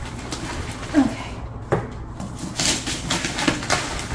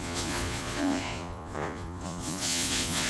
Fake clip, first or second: second